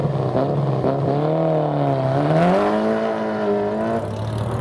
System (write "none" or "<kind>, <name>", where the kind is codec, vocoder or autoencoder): none